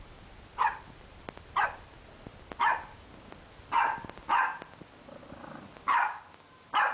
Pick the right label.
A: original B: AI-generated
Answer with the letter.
A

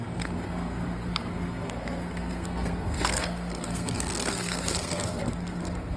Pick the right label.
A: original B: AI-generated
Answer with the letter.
B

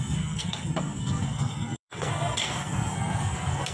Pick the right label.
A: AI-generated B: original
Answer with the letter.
A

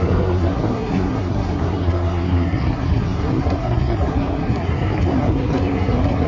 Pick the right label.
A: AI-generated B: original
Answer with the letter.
A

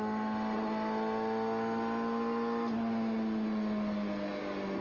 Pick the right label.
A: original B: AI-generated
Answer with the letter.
A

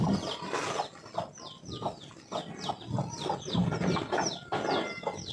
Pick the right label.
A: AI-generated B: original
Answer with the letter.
B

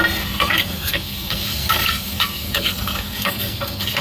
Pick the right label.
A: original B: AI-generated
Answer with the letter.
B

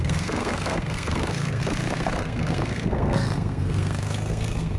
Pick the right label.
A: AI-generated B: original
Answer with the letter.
A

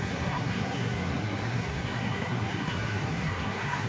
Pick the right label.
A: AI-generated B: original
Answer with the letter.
A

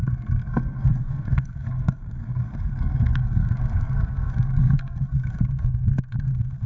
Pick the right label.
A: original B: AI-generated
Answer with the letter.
B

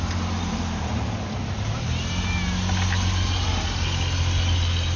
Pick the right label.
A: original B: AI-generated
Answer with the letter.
A